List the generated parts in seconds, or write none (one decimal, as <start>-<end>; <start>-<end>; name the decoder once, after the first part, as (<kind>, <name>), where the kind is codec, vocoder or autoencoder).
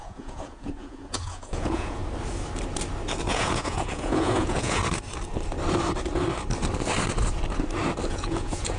0.0-2.0 (vocoder, Vocos); 3.3-4.8; 8.1-8.8